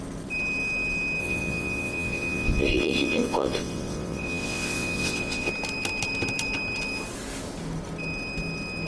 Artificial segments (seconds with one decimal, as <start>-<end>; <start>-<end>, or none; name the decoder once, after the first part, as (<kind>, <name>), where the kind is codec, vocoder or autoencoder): 1.2-5.5 (vocoder, WaveNeXt)